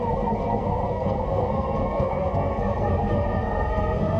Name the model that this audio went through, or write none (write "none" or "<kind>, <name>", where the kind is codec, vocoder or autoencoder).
codec, SNAC